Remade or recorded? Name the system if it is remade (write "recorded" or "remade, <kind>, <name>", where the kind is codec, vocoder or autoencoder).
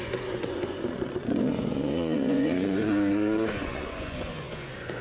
remade, vocoder, Vocos